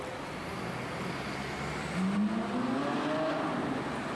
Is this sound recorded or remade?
recorded